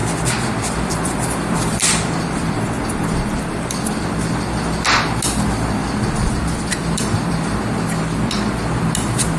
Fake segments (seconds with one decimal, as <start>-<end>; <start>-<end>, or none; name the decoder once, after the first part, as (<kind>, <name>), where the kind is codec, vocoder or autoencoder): 0.0-4.0 (vocoder, BigVGAN v2); 5.8-7.6